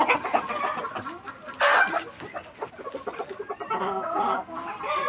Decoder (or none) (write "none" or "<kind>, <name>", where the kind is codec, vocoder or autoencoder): none